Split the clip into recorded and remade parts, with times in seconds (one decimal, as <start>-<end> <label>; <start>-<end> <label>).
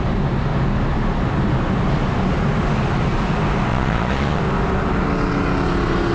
0.0-3.7 recorded; 3.7-4.4 remade; 4.4-6.1 recorded